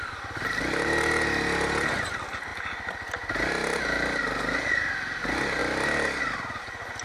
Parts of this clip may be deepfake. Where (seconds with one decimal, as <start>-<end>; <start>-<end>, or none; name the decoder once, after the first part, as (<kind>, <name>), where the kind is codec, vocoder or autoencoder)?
none